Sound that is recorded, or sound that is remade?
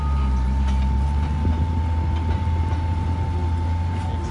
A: recorded